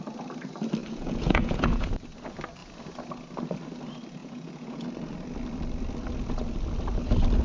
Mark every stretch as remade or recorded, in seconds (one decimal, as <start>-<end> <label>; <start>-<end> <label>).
0.0-0.8 recorded; 0.8-1.9 remade; 1.9-4.2 recorded; 4.2-4.8 remade; 4.8-7.4 recorded